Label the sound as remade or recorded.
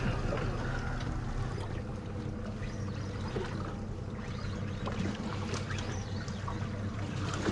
recorded